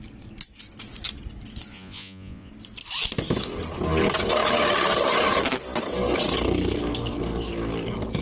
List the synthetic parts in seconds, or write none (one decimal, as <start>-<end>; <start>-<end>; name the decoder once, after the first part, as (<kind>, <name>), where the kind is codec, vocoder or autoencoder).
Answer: 1.7-2.5 (vocoder, Vocos)